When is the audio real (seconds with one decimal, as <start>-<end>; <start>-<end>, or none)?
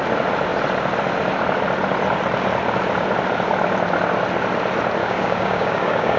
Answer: 0.0-5.0